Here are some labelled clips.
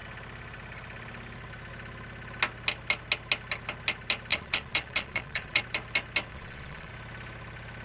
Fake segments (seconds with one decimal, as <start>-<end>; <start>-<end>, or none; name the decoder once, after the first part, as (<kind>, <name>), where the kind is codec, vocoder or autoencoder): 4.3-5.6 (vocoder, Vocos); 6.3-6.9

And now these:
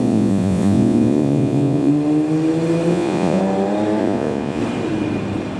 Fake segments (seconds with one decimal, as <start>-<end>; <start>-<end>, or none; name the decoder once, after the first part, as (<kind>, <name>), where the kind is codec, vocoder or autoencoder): 0.0-1.9 (vocoder, Vocos); 2.9-3.4; 4.0-4.6

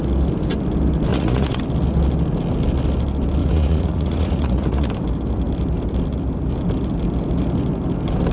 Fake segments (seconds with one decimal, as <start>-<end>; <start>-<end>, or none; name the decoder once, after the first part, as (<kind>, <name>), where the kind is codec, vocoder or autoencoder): 1.1-1.6 (vocoder, Vocos); 3.4-4.9

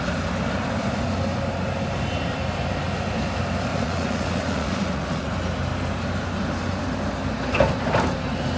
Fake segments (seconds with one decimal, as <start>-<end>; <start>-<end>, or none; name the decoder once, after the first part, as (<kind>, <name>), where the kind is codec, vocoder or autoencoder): 3.7-5.3 (vocoder, Vocos)